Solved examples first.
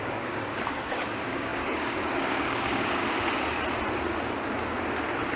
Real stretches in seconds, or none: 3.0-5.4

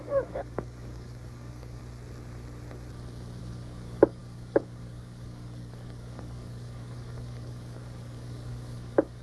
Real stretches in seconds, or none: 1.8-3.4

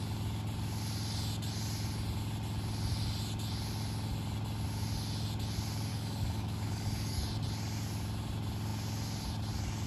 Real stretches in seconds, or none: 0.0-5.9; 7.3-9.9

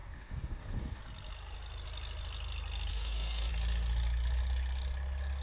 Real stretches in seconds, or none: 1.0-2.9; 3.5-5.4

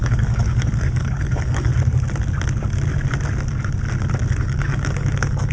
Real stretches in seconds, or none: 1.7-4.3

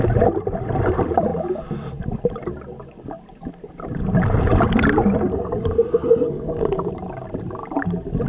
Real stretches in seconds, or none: 0.0-6.0; 6.9-8.3